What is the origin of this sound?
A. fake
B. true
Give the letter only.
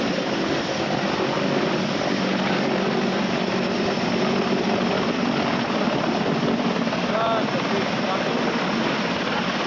B